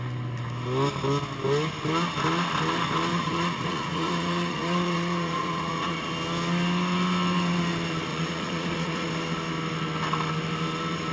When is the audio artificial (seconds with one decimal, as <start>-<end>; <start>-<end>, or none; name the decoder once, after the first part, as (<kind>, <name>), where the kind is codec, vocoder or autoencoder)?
3.1-6.1 (vocoder, Vocos); 8.1-9.1